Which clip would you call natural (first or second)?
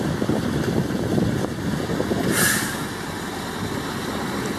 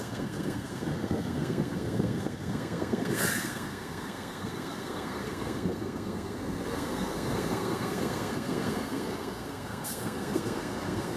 first